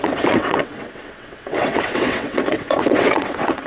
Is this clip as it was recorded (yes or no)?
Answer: no